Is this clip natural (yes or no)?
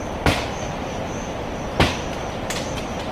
yes